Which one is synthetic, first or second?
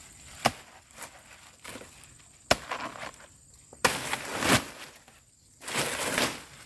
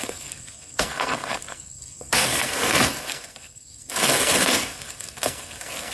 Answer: second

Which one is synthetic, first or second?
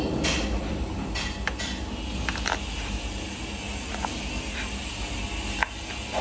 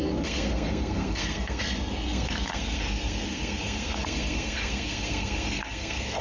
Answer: second